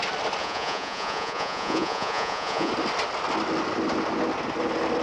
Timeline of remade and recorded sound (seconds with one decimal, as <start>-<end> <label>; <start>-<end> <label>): 0.0-0.4 recorded; 0.4-2.7 remade; 2.7-5.0 recorded